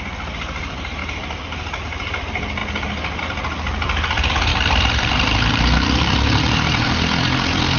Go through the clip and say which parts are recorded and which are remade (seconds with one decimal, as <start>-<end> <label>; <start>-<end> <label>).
0.0-2.6 remade; 2.6-3.2 recorded; 3.2-7.8 remade